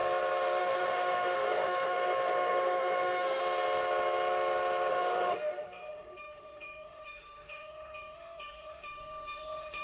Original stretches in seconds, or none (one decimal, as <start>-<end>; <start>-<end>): 0.0-0.6; 3.4-4.9